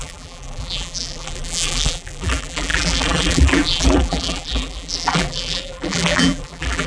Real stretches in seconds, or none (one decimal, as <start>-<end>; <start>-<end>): none